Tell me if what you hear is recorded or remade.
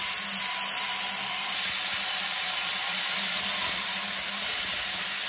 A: recorded